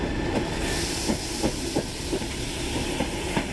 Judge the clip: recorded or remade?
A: recorded